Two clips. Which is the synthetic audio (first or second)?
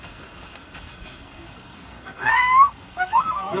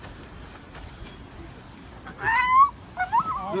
first